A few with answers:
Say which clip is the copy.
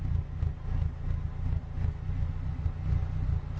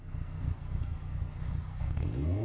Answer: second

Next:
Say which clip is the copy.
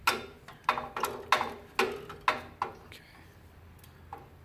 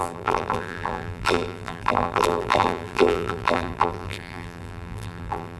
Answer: second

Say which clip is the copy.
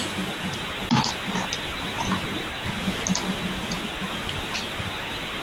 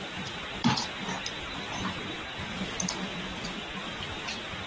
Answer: second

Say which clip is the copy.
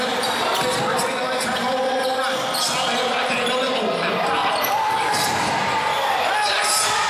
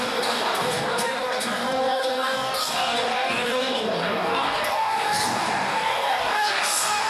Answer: second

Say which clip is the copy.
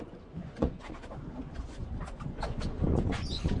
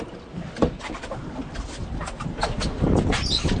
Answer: first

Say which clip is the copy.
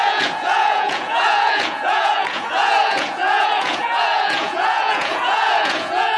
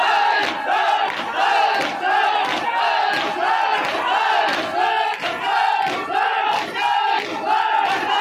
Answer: first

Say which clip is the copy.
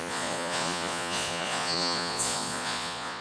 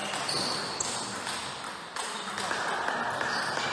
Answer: first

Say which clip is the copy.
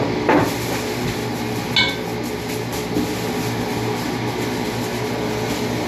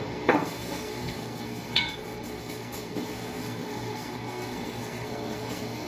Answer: second